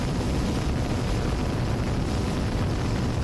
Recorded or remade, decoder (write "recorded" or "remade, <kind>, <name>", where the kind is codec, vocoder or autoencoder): recorded